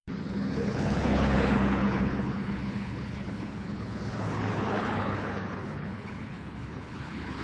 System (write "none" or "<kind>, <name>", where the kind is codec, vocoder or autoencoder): codec, HILCodec